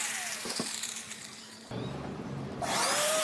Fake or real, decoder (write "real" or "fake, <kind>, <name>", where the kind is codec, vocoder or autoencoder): fake, vocoder, BigVGAN v2